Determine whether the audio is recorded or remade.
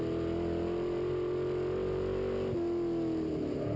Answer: recorded